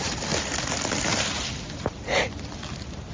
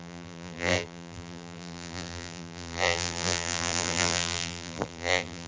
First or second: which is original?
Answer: first